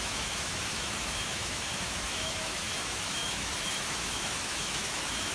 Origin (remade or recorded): remade